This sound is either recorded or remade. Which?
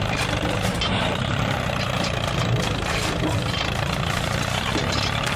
remade